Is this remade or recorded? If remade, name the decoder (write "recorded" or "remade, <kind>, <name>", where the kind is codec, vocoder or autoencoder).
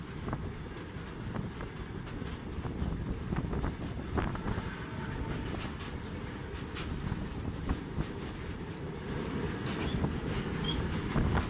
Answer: recorded